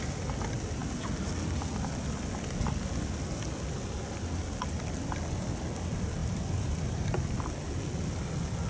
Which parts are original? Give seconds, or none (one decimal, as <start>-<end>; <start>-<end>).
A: 0.0-6.2; 7.4-8.7